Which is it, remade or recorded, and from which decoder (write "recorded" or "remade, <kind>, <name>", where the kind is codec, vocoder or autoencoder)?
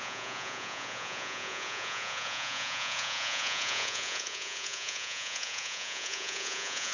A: remade, vocoder, Vocos